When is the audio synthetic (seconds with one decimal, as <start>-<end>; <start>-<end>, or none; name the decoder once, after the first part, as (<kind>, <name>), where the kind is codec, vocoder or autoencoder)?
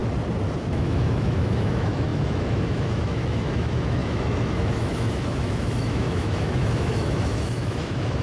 0.7-8.2 (autoencoder, DAC-VAE)